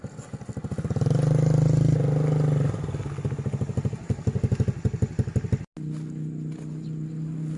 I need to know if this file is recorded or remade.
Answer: recorded